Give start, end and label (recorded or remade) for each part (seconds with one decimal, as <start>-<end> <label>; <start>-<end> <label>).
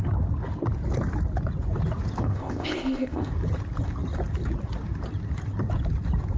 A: 0.0-2.2 recorded; 2.2-3.3 remade; 3.3-6.4 recorded